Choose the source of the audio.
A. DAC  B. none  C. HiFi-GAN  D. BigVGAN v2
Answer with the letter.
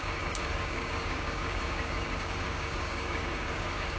A